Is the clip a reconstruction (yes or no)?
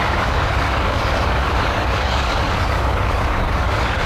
yes